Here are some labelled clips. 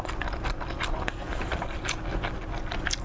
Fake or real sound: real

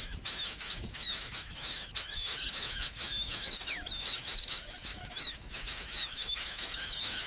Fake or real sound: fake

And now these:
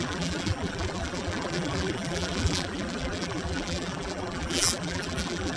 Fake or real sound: fake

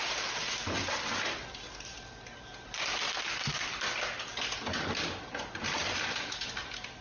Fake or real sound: real